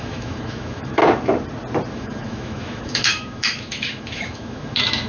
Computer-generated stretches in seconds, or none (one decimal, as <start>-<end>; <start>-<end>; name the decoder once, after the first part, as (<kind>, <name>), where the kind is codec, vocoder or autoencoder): 0.0-1.0 (autoencoder, DAC-VAE); 1.9-5.1